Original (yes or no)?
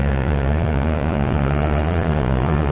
no